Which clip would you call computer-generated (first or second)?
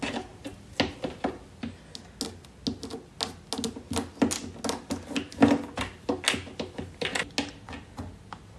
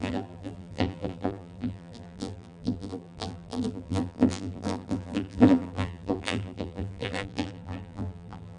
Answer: second